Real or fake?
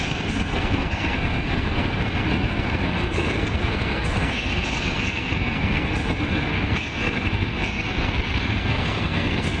fake